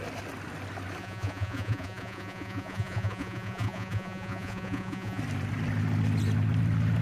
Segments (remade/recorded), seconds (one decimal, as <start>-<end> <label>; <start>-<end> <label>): 0.0-1.0 recorded; 1.0-5.2 remade; 5.2-7.0 recorded